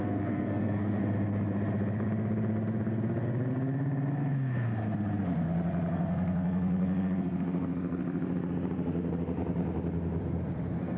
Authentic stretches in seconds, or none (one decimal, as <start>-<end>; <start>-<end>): 1.0-5.9; 8.0-10.6